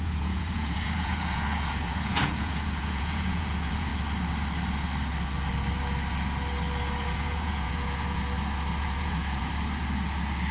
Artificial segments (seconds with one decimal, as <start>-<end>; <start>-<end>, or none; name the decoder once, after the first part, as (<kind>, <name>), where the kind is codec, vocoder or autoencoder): 0.0-3.9 (vocoder, Vocos); 7.0-8.2; 8.8-9.5